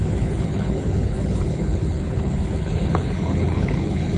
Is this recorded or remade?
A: remade